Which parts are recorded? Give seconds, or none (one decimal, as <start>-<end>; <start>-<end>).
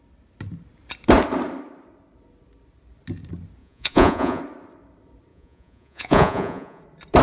0.0-3.6; 4.4-5.3; 6.8-7.2